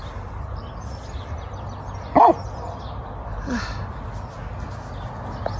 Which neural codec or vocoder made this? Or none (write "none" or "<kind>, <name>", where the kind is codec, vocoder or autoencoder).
none